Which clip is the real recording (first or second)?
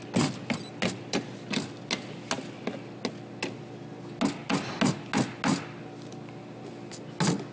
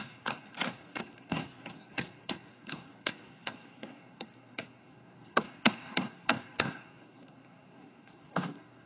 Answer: first